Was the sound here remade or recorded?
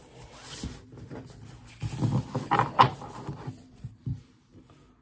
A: recorded